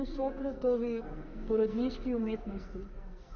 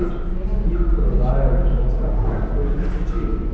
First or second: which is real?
second